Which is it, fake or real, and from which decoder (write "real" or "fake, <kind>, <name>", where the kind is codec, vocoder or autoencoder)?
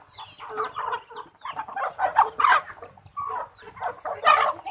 real